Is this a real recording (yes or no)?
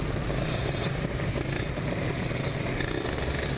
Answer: yes